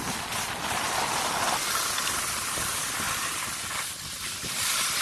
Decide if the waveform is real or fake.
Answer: real